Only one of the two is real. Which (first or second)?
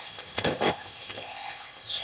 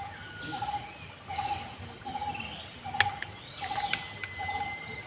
second